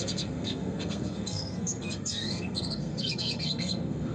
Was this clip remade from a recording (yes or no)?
yes